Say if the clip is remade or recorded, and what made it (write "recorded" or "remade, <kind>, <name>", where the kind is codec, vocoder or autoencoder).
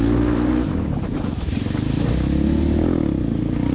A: recorded